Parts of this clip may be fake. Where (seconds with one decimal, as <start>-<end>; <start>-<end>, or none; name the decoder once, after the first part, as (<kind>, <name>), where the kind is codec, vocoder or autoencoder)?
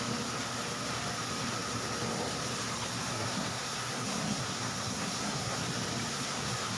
3.1-5.6 (codec, SNAC); 6.1-6.8